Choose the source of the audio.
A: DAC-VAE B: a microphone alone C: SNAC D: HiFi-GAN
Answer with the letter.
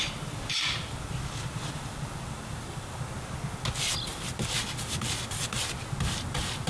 B